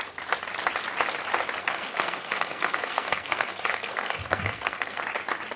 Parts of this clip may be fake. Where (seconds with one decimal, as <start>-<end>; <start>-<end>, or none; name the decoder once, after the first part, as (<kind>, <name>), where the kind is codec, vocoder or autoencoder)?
1.6-5.0 (codec, SNAC)